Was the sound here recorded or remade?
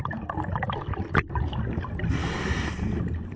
recorded